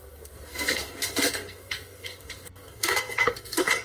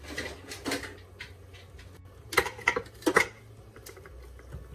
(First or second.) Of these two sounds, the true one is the second